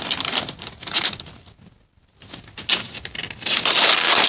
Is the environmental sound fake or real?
real